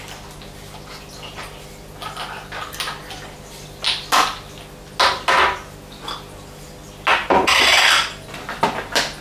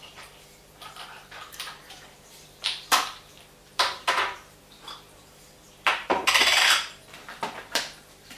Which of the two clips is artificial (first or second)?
second